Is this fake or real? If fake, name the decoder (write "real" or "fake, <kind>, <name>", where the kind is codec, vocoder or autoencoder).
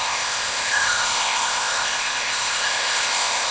fake, codec, ZipCodec